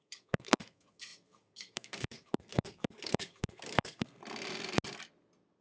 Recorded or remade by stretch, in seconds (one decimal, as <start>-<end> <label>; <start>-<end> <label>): 0.0-4.2 remade; 4.2-5.6 recorded